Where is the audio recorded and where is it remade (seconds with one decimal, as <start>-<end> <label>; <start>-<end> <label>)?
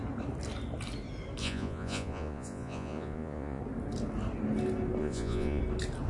0.0-1.4 recorded; 1.4-3.6 remade; 3.6-5.0 recorded; 5.0-5.6 remade; 5.6-6.1 recorded